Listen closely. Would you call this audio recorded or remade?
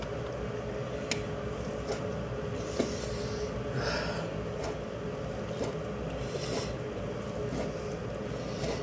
recorded